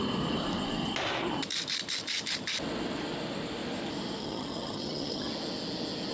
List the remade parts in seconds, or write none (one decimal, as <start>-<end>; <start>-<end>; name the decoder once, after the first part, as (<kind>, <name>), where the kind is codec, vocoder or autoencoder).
4.2-5.3 (vocoder, HiFi-GAN)